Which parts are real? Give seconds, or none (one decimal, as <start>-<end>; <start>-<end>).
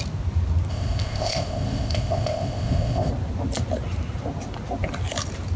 0.0-0.7; 3.1-5.6